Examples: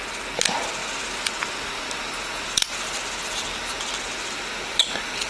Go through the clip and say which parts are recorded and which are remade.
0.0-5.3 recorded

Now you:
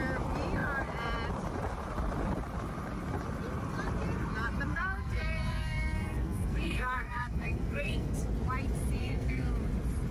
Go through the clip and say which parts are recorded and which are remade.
0.0-4.7 recorded; 4.7-8.2 remade; 8.2-9.0 recorded; 9.0-9.5 remade; 9.5-10.1 recorded

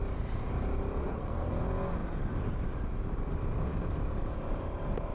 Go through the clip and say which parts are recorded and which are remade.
0.0-1.0 recorded; 1.0-1.5 remade; 1.5-5.1 recorded

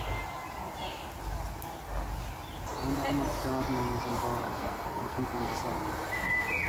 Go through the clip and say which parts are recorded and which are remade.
0.0-4.5 recorded; 4.5-5.6 remade; 5.6-6.7 recorded

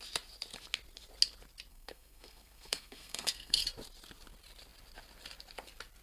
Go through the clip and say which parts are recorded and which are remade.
0.0-1.7 recorded; 1.7-3.6 remade; 3.6-6.0 recorded